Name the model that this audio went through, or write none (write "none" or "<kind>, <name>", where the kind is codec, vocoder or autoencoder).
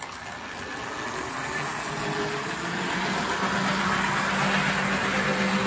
none